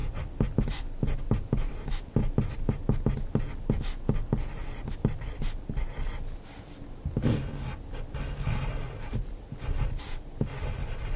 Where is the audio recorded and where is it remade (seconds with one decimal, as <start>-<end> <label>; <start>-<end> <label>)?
0.0-11.2 recorded